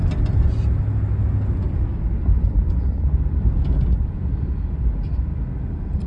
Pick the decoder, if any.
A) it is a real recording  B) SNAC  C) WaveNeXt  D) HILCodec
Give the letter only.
A